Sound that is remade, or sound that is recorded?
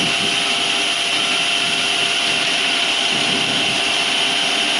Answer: recorded